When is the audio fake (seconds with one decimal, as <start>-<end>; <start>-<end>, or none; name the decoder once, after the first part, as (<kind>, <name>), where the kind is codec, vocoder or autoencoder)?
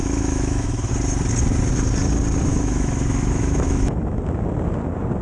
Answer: 0.0-0.9 (autoencoder, DAC-VAE); 2.5-4.2